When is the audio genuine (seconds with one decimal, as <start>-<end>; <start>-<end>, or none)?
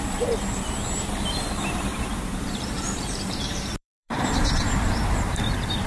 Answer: 0.0-1.9; 5.4-5.9